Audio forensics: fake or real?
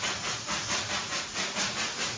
fake